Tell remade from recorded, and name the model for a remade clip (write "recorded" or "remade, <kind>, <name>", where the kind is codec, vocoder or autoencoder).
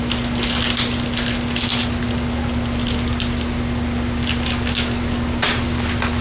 recorded